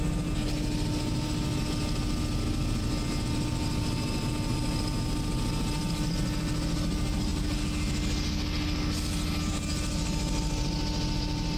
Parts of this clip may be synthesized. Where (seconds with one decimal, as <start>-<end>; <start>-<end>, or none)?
none